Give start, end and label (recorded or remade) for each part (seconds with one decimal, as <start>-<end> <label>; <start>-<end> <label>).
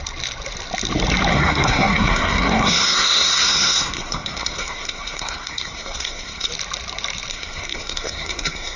0.0-1.3 recorded; 1.3-6.5 remade; 6.5-7.3 recorded; 7.3-8.8 remade